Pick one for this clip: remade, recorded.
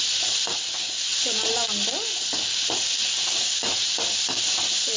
recorded